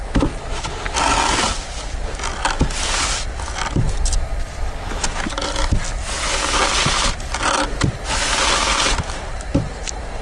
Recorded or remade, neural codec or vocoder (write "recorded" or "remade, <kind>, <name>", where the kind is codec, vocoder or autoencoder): recorded